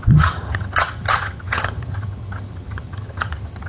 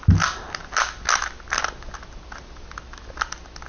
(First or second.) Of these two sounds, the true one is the second